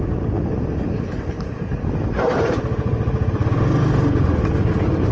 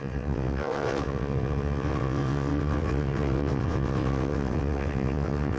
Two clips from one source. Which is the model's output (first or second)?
second